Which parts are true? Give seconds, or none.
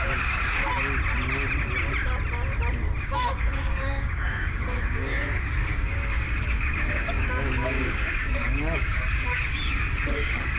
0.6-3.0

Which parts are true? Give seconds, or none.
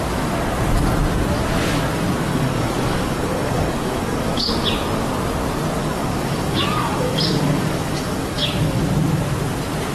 0.0-2.3; 4.5-5.8; 8.8-9.9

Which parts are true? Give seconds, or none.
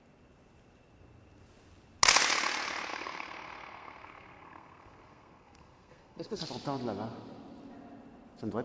0.0-2.9; 6.5-8.6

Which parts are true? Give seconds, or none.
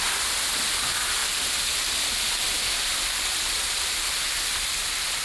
0.0-5.2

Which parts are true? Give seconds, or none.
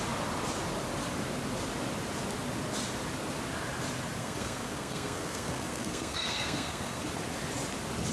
0.0-4.2; 7.0-8.1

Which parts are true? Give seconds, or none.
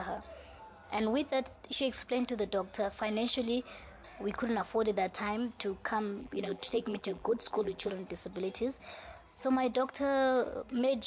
0.0-6.2; 7.9-11.1